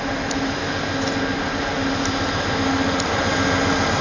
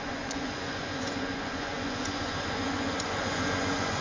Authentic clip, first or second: first